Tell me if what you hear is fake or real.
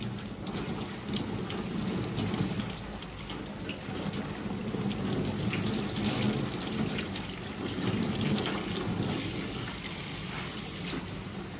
real